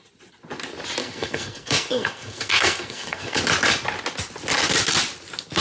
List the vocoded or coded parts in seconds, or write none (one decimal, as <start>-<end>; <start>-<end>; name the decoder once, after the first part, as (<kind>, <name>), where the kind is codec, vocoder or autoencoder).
1.0-3.4 (codec, SNAC)